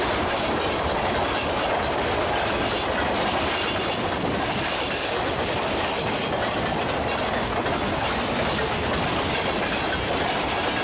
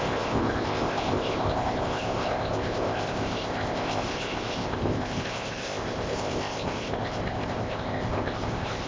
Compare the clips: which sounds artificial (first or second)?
second